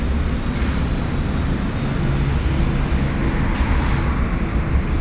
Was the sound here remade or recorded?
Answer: recorded